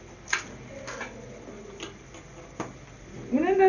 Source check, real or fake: real